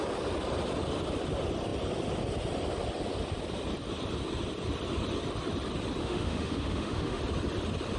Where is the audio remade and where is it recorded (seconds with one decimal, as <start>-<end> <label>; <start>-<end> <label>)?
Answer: 0.0-6.0 recorded; 6.0-7.2 remade; 7.2-8.0 recorded